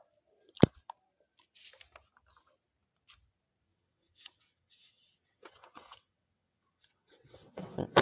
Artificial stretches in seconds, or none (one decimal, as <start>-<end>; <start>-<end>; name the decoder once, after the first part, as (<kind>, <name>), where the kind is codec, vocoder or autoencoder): 3.7-8.0 (vocoder, WaveNeXt)